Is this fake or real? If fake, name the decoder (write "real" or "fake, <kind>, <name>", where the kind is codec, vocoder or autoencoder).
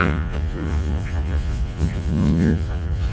fake, vocoder, Vocos